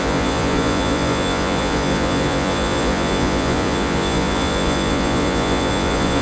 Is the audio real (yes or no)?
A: no